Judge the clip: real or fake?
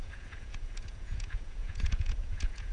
fake